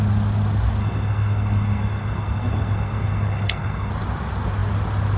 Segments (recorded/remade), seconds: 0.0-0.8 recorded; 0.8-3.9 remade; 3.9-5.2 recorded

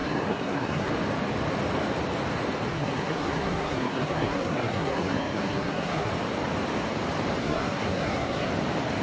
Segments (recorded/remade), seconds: 0.0-0.9 remade; 0.9-2.7 recorded; 2.7-6.1 remade; 6.1-7.4 recorded; 7.4-8.5 remade; 8.5-9.0 recorded